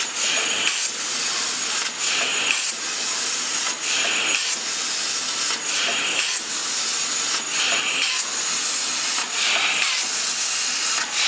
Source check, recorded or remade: recorded